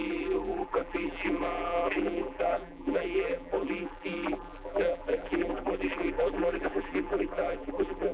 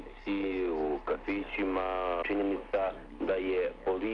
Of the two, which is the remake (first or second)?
first